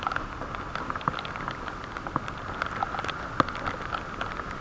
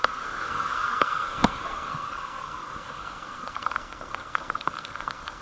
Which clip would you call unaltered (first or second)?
first